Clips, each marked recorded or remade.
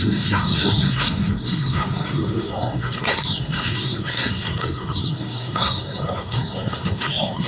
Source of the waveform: remade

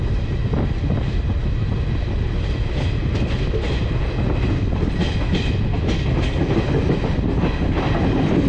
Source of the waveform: recorded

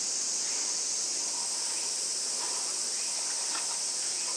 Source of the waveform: recorded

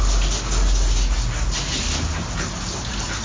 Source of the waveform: recorded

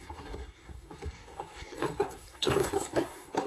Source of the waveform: remade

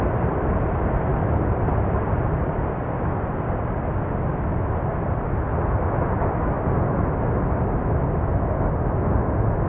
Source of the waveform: recorded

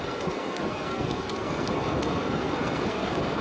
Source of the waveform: remade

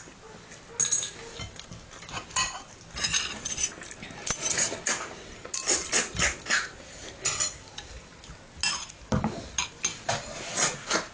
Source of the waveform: recorded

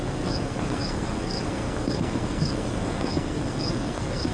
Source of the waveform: remade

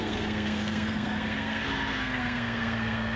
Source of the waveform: remade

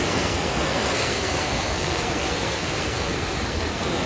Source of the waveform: remade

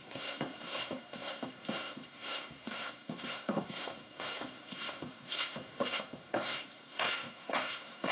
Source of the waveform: remade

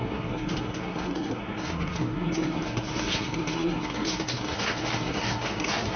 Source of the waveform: remade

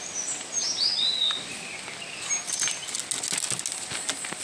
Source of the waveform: recorded